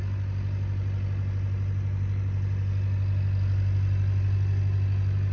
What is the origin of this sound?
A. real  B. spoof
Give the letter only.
A